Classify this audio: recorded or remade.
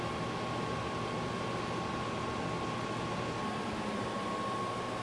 recorded